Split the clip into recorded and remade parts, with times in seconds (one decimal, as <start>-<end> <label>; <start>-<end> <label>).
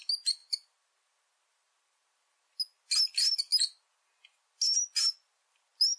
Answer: 0.0-6.0 recorded